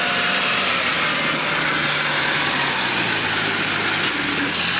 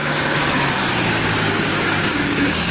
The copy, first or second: second